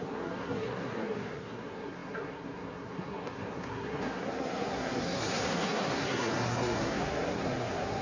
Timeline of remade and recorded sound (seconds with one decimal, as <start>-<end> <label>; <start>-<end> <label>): 0.0-8.0 remade